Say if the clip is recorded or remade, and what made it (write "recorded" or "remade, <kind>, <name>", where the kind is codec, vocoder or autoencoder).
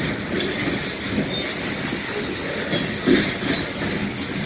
recorded